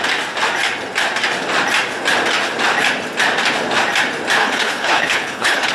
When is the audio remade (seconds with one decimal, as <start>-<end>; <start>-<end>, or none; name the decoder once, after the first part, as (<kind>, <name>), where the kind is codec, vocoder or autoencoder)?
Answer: 4.4-5.7 (codec, HILCodec)